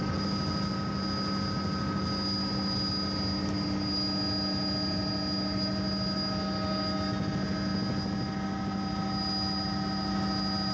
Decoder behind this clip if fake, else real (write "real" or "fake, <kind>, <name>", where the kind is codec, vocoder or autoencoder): real